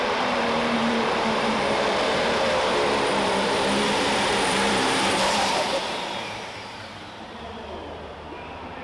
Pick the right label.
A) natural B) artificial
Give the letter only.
B